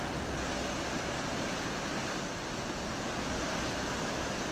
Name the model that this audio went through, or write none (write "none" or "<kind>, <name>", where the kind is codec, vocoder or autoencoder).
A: none